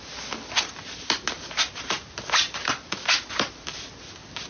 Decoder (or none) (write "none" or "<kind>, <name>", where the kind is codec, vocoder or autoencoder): none